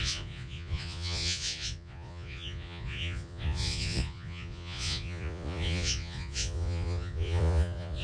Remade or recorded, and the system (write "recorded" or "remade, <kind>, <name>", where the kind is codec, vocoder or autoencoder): remade, vocoder, Vocos